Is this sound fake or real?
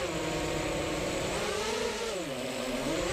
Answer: real